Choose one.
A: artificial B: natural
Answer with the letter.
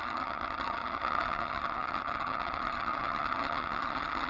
A